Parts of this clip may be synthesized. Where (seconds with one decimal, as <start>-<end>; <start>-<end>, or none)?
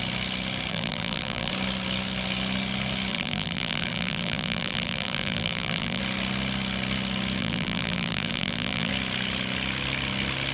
0.7-1.5; 3.1-6.0; 7.4-8.9